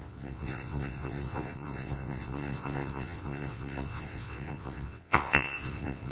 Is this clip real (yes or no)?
no